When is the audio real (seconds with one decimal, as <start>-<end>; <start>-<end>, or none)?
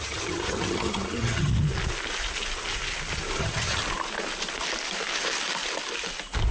1.5-3.4; 3.8-6.5